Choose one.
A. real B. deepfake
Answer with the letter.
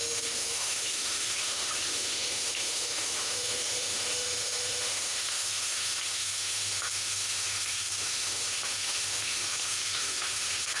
B